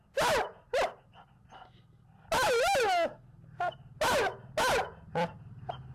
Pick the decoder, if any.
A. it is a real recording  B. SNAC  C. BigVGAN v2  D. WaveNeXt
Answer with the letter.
A